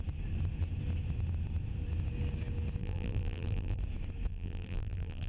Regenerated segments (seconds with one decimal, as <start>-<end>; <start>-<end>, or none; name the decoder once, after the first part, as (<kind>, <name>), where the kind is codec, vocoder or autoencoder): 2.8-3.8 (vocoder, BigVGAN v2); 4.3-5.3